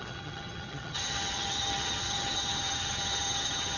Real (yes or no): no